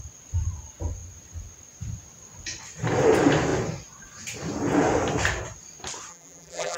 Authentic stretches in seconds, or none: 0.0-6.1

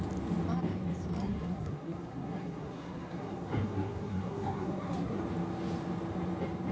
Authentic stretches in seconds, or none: 0.0-1.2; 5.2-6.7

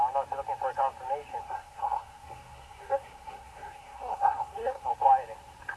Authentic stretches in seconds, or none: 0.0-1.4; 4.9-5.8

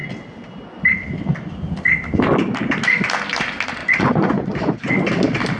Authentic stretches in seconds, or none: 0.0-3.8; 4.9-5.6

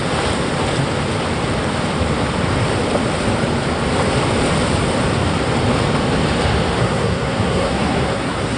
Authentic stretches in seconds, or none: 0.0-6.8